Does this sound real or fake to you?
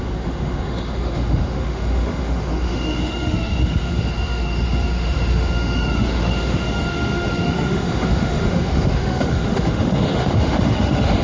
fake